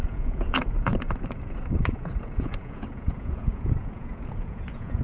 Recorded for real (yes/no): no